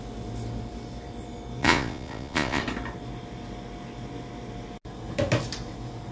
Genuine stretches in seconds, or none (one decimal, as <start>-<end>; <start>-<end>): 0.0-1.6; 2.6-6.1